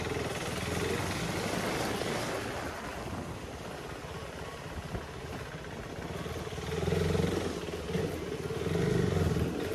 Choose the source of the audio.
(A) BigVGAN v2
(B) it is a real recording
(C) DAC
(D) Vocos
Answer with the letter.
B